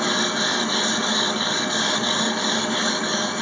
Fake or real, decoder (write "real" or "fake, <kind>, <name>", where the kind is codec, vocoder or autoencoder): fake, codec, DAC